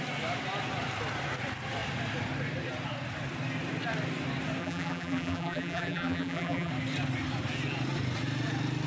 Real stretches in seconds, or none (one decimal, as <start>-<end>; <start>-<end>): 0.0-4.6; 6.7-8.9